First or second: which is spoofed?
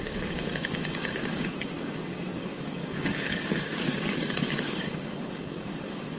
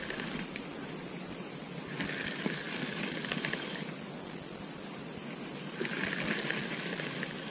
first